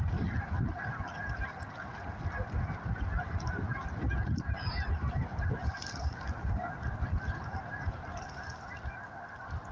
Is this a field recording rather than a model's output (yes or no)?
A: yes